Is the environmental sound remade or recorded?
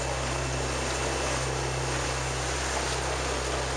recorded